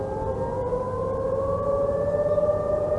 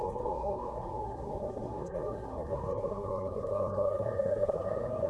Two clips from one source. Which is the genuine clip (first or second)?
first